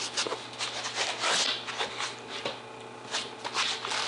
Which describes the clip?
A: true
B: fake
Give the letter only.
A